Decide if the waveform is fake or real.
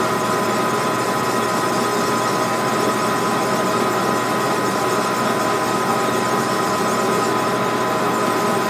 real